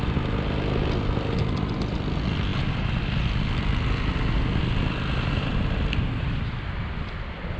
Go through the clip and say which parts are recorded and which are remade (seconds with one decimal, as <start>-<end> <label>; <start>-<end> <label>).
0.0-7.6 recorded